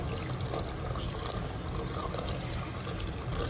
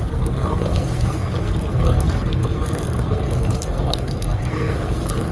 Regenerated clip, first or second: second